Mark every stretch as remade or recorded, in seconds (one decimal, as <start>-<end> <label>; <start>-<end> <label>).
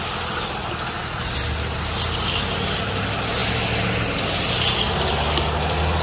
0.0-6.0 recorded